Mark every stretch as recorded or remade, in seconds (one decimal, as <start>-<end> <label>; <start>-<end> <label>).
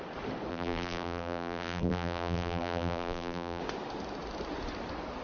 0.0-0.5 recorded; 0.5-3.6 remade; 3.6-5.2 recorded